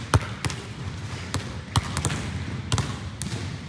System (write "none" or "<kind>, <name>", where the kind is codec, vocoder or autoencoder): none